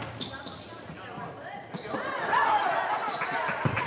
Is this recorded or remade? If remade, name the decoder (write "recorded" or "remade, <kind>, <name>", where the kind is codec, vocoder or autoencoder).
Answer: recorded